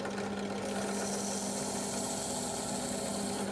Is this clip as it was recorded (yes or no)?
yes